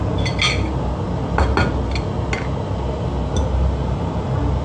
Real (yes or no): yes